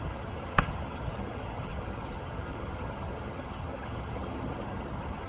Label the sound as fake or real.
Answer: fake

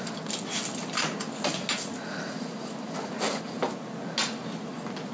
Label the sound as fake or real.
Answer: real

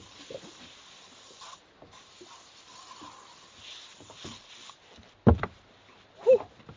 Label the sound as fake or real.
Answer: real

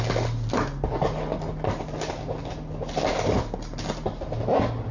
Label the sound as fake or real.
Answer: real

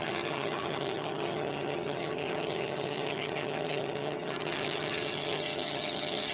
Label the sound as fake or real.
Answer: fake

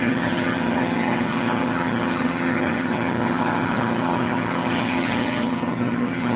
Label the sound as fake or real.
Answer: fake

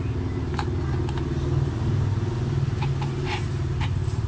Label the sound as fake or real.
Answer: real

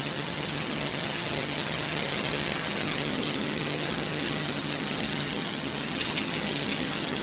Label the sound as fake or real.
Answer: fake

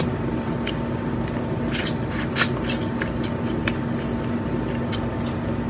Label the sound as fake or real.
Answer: real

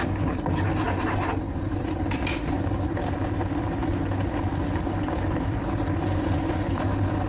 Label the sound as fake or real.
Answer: real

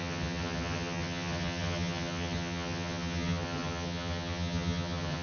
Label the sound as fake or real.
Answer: fake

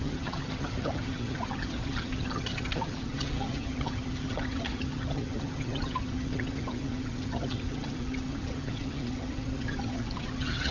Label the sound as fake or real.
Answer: fake